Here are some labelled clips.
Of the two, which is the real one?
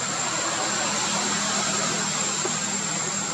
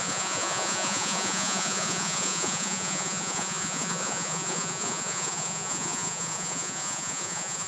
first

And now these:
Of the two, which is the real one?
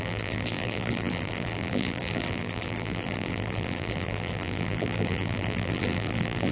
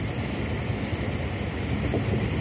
second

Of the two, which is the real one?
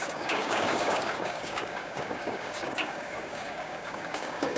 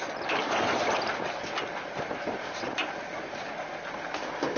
second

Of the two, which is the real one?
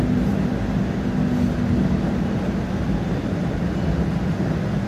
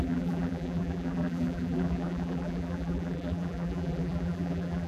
first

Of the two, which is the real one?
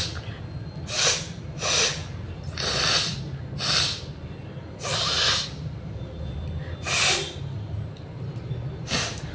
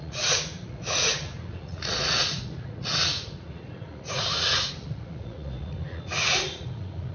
first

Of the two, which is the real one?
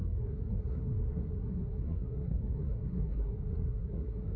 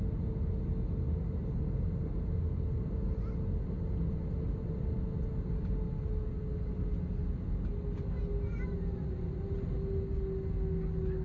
second